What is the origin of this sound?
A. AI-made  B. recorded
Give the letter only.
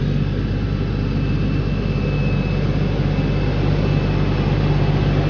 B